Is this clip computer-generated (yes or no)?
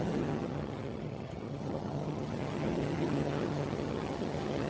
yes